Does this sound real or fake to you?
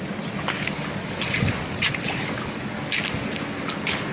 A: real